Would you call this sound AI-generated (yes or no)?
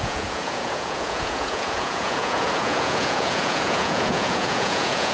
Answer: yes